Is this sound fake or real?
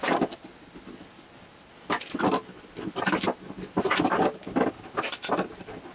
real